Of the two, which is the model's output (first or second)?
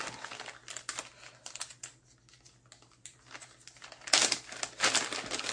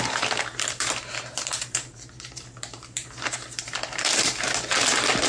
second